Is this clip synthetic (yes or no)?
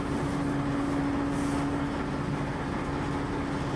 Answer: no